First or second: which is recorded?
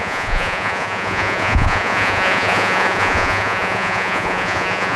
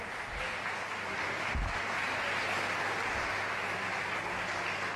second